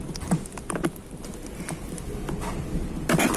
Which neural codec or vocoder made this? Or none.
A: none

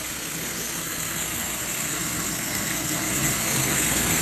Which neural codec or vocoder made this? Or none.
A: codec, SNAC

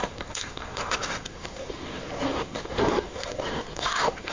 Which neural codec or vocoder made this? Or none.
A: codec, SNAC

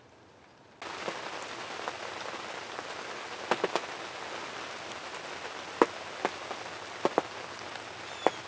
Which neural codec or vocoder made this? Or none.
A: none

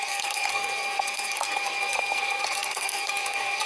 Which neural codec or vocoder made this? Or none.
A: codec, SNAC